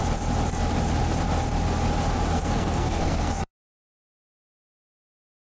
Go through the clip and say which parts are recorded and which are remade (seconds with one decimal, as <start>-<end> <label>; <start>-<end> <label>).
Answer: 0.0-2.3 recorded; 2.3-3.5 remade; 3.5-5.6 recorded